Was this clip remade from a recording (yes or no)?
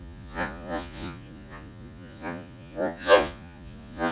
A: yes